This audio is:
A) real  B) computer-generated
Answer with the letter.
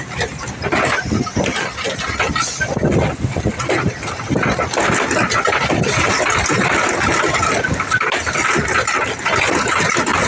A